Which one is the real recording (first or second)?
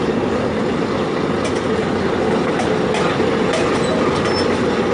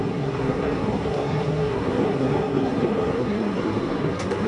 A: first